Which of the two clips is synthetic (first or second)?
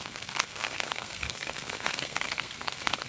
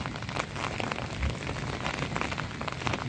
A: first